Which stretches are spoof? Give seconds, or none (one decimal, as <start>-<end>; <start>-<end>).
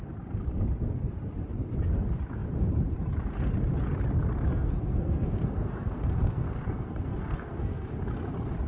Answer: 4.5-7.8